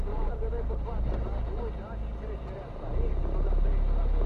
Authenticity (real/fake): real